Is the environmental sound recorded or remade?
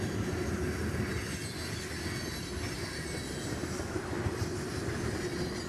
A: recorded